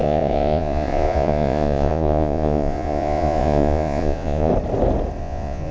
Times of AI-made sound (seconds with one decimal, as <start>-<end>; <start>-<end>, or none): 0.0-4.5; 5.2-5.7